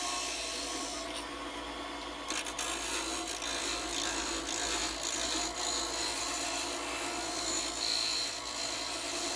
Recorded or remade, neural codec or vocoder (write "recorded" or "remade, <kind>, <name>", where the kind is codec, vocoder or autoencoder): recorded